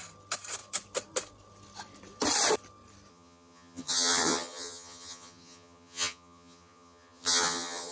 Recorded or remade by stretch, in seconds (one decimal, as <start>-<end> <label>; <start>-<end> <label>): 0.0-3.1 recorded; 3.1-7.9 remade